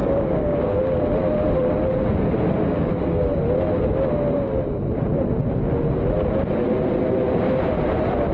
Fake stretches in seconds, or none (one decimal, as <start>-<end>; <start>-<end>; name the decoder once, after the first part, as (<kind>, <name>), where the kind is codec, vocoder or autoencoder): 0.0-0.8 (codec, DAC); 2.9-3.4